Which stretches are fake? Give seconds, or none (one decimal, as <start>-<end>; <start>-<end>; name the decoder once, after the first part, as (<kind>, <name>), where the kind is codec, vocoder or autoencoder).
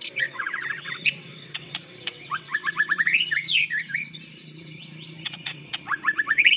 0.0-6.6 (vocoder, WaveNeXt)